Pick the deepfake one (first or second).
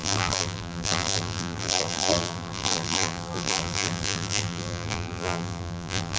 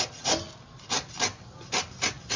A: first